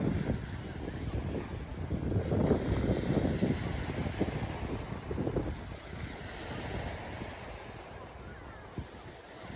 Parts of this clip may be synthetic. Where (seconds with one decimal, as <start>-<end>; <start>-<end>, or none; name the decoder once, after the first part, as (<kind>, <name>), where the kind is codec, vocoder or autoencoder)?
none